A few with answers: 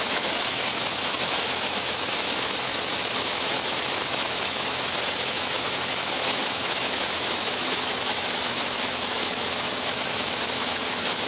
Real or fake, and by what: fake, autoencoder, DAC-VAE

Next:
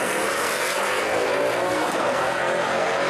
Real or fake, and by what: fake, codec, SNAC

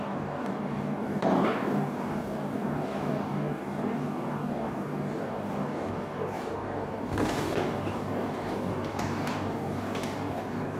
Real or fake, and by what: fake, codec, DAC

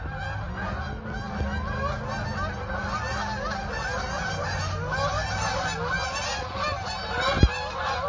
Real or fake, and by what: real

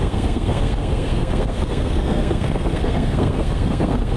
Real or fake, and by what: fake, codec, SNAC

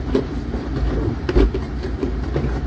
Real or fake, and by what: fake, vocoder, BigVGAN v2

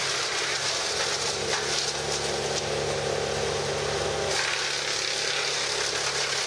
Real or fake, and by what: real